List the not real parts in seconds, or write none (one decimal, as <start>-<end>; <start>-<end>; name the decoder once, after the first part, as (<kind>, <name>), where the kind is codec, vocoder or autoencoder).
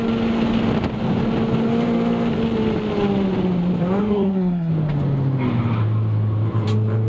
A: 4.0-4.7 (codec, SNAC)